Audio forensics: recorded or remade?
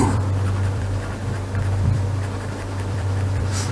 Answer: remade